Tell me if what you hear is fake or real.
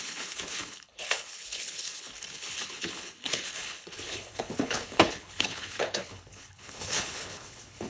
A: fake